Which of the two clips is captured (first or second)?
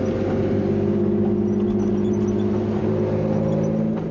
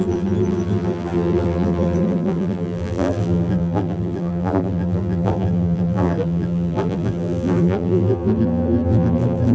first